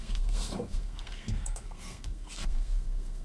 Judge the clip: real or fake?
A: fake